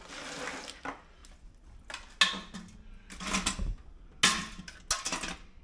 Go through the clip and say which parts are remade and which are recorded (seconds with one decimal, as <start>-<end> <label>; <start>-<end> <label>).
0.0-5.6 recorded